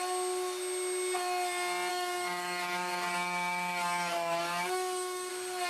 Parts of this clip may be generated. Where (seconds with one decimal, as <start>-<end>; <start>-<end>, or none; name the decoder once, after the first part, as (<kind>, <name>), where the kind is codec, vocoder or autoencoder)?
1.9-5.3 (codec, DAC)